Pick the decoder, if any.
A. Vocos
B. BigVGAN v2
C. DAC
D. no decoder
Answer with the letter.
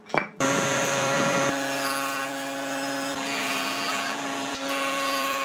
B